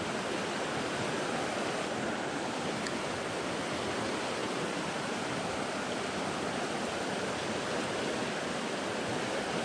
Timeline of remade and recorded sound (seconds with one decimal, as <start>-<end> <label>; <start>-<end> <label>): 0.0-9.6 recorded